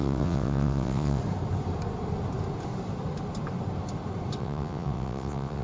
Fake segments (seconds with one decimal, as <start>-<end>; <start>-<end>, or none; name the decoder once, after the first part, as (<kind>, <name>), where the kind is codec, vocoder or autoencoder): 0.0-1.2 (vocoder, WaveNeXt); 4.4-5.6